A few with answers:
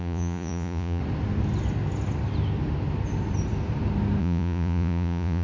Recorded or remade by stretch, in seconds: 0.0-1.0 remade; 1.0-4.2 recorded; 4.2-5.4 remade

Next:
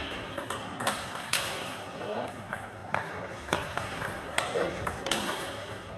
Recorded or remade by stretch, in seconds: 0.0-6.0 remade

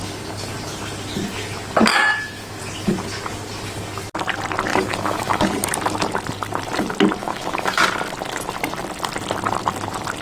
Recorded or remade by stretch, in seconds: 0.0-1.9 recorded; 1.9-2.6 remade; 2.6-4.7 recorded; 4.7-5.5 remade; 5.5-7.2 recorded; 7.2-7.8 remade; 7.8-10.2 recorded

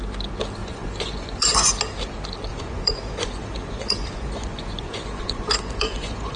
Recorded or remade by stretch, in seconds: 0.0-0.6 recorded; 0.6-1.7 remade; 1.7-2.5 recorded; 2.5-6.4 remade

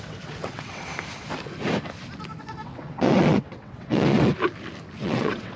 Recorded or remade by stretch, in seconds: 0.0-0.9 remade; 0.9-2.4 recorded; 2.4-4.3 remade; 4.3-5.0 recorded; 5.0-5.6 remade

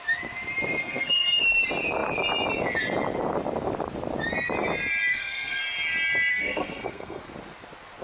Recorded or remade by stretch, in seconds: 0.0-0.8 recorded; 0.8-1.4 remade; 1.4-5.1 recorded; 5.1-5.6 remade; 5.6-6.3 recorded; 6.3-7.2 remade; 7.2-8.0 recorded

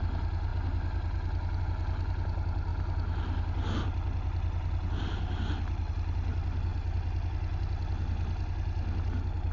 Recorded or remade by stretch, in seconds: 0.0-9.5 recorded